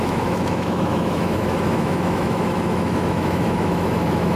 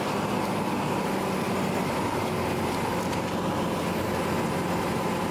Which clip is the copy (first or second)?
first